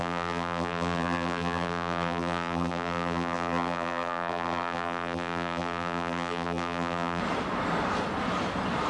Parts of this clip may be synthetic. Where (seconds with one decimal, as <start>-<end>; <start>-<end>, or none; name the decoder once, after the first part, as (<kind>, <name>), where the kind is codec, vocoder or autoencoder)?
0.0-7.2 (vocoder, BigVGAN v2)